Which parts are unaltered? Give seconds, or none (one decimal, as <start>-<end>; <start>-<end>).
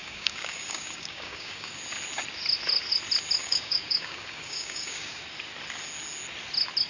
1.8-3.4; 5.2-6.9